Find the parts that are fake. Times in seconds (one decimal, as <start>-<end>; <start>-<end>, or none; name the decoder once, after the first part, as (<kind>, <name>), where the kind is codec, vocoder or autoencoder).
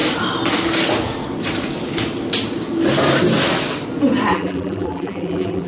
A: 4.3-5.7 (vocoder, BigVGAN v2)